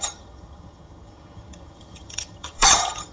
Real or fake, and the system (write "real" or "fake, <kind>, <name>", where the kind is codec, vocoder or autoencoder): fake, vocoder, HiFi-GAN